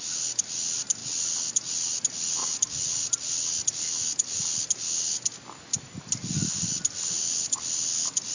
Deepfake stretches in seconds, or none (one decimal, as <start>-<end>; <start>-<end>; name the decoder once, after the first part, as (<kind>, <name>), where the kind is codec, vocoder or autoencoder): none